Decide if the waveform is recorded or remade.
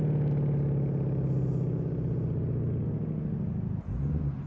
recorded